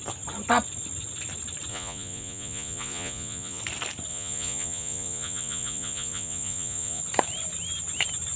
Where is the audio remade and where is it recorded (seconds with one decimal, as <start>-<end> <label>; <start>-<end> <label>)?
0.0-1.7 recorded; 1.7-3.6 remade; 3.6-4.1 recorded; 4.1-7.0 remade; 7.0-8.4 recorded